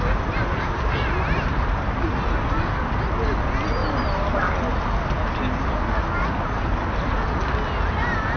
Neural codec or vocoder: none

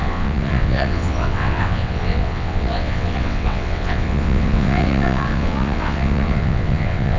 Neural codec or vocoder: vocoder, WaveNeXt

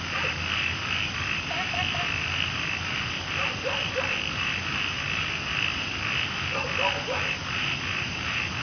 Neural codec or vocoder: none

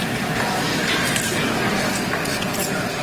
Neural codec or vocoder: none